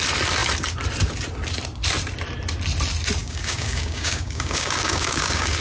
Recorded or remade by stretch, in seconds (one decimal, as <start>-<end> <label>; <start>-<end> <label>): 0.0-3.2 recorded; 3.2-5.6 remade